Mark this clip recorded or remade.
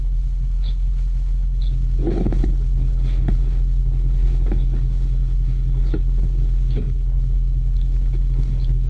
remade